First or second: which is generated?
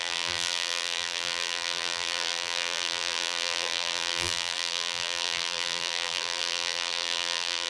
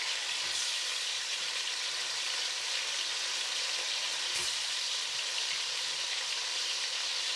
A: first